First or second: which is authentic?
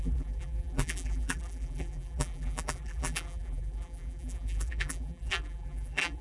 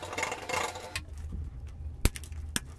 second